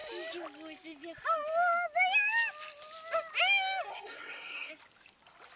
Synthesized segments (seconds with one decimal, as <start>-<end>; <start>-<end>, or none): 3.9-4.7